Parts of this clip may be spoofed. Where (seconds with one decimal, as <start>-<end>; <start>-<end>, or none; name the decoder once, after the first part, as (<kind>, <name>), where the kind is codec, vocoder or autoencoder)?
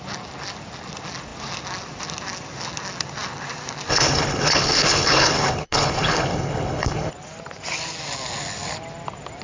3.9-7.1 (codec, HILCodec)